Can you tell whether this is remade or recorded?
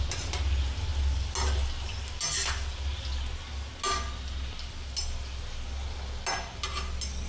recorded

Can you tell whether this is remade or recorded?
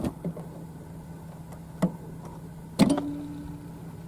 recorded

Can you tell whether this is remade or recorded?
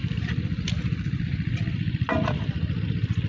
recorded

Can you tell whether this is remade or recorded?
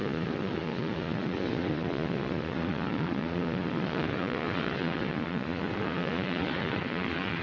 remade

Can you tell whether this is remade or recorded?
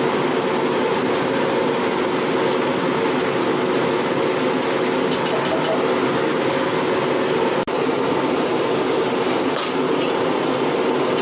recorded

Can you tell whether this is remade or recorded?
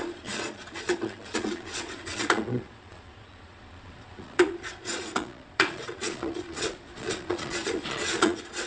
remade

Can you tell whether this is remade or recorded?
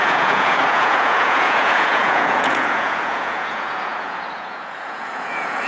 remade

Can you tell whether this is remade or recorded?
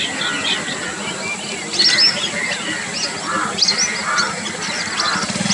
recorded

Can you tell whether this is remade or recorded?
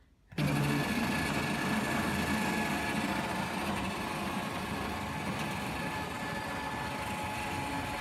recorded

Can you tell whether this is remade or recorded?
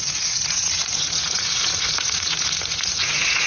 remade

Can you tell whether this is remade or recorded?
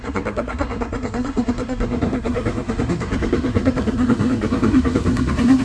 remade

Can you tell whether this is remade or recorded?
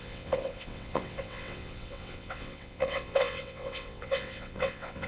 remade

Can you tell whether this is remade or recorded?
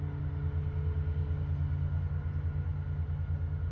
recorded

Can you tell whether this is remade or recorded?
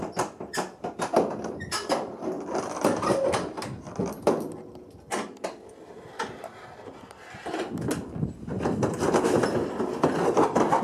recorded